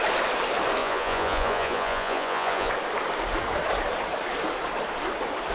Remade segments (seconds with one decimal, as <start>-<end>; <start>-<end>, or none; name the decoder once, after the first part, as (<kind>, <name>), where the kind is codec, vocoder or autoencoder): 0.8-2.7 (vocoder, Vocos)